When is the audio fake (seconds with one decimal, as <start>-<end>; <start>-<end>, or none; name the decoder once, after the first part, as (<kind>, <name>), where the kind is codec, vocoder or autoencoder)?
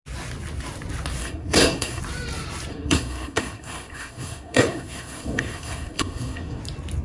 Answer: 1.2-2.0 (codec, SNAC); 2.7-6.6